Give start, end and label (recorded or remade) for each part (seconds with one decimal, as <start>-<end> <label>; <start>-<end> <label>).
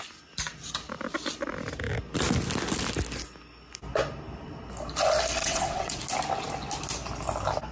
0.0-5.4 recorded; 5.4-6.0 remade; 6.0-7.7 recorded